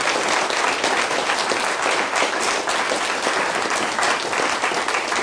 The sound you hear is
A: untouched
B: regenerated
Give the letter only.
A